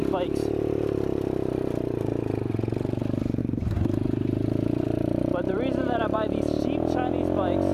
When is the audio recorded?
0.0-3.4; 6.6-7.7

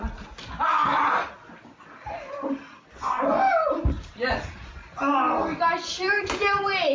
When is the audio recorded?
0.0-6.9